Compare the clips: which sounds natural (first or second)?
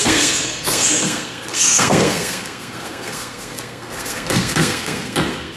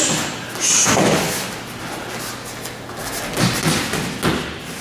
second